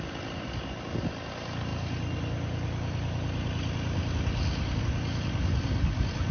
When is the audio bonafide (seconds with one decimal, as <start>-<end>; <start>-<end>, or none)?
0.0-6.3